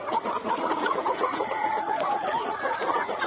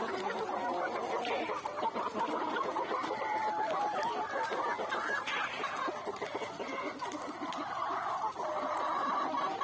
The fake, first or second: first